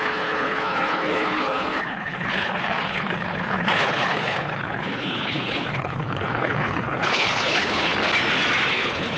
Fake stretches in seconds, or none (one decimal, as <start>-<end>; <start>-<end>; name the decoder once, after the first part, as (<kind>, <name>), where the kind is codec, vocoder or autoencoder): 0.0-7.9 (codec, HILCodec); 8.7-9.2